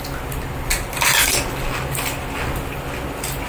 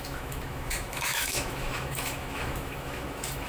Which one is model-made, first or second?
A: second